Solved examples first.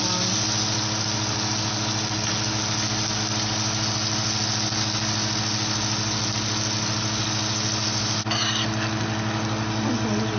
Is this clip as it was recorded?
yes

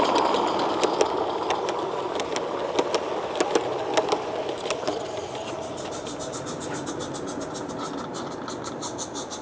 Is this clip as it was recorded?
yes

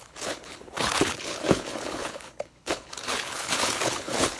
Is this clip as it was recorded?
no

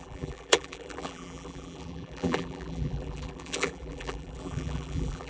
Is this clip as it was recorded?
no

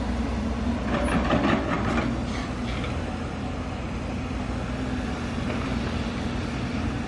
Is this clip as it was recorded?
yes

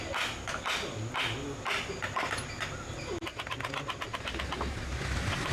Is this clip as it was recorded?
yes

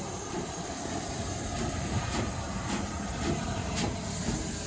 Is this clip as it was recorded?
no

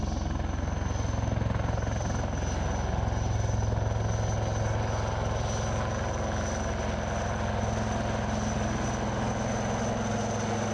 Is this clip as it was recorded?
yes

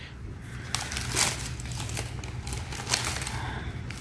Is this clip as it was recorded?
yes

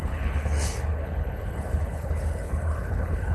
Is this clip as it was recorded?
no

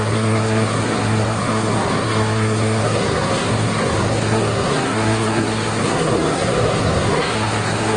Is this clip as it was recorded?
no